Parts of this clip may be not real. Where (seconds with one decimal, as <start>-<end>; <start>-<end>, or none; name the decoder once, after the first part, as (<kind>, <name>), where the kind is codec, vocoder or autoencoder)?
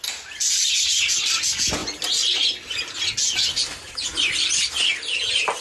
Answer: none